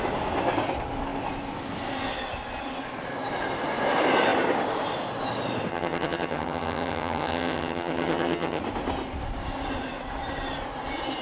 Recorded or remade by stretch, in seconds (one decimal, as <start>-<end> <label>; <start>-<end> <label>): 0.0-5.7 recorded; 5.7-8.6 remade; 8.6-11.2 recorded